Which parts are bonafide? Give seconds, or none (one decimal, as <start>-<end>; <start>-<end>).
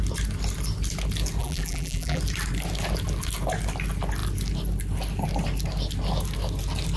0.0-1.4; 2.2-7.0